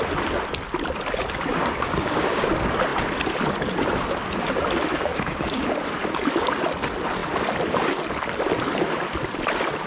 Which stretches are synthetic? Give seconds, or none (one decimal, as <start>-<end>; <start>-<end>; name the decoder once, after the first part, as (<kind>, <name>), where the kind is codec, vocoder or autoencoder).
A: 1.5-2.5 (codec, DAC); 4.9-5.7